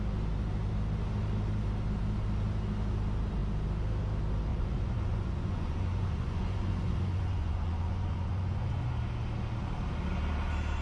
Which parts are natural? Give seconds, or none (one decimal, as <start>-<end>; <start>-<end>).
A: 0.0-4.5; 8.9-10.8